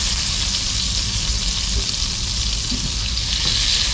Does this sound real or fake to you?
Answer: real